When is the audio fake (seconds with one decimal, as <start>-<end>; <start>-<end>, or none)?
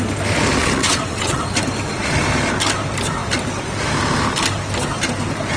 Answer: 0.6-1.4